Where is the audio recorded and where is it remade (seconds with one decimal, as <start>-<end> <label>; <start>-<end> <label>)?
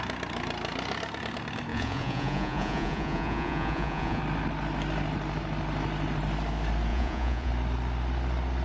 0.0-1.7 recorded; 1.7-4.2 remade; 4.2-6.9 recorded; 6.9-7.5 remade; 7.5-8.6 recorded